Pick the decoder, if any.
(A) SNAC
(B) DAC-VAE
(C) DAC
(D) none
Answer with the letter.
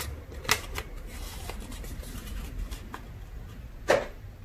D